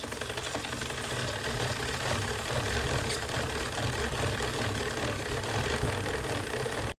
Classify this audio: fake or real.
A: real